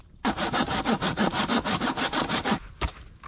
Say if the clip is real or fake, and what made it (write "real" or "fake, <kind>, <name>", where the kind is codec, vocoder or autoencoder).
fake, vocoder, BigVGAN v2